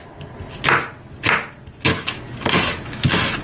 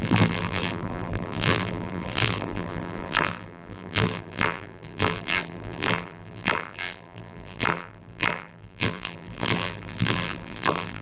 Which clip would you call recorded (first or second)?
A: first